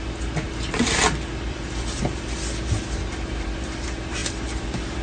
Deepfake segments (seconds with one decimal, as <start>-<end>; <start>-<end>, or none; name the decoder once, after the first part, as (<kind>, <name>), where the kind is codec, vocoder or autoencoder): 1.3-2.0 (vocoder, BigVGAN v2); 4.2-5.0